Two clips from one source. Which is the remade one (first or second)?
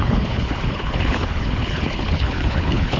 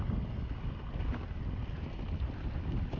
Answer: first